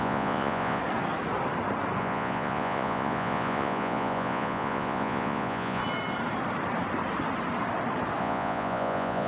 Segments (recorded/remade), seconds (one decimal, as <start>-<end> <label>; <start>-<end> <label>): 0.0-0.8 remade; 0.8-2.0 recorded; 2.0-5.8 remade; 5.8-8.2 recorded; 8.2-9.3 remade